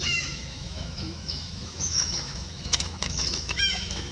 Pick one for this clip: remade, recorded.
remade